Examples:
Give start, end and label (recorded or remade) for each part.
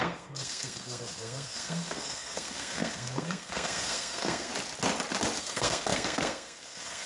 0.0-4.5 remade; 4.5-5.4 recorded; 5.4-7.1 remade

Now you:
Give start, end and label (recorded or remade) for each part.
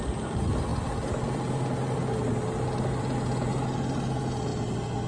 0.0-5.1 recorded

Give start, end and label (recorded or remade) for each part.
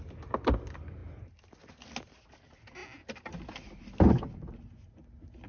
0.0-5.5 recorded